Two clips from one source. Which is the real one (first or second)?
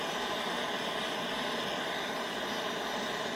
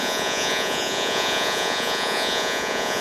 first